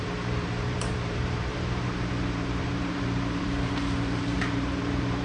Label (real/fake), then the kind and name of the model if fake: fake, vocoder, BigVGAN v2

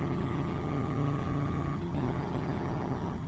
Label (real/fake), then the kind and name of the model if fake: fake, vocoder, HiFi-GAN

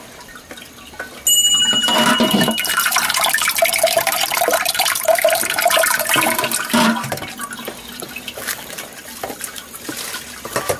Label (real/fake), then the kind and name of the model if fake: real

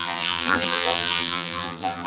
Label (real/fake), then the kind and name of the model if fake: fake, vocoder, BigVGAN v2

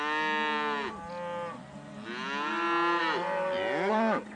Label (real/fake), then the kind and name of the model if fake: real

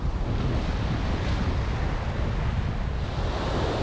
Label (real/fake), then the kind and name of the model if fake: real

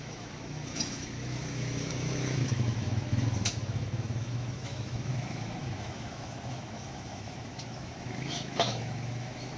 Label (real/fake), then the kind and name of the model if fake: fake, autoencoder, DAC-VAE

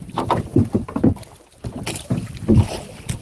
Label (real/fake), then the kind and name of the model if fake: real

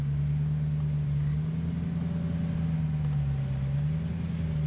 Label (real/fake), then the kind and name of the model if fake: real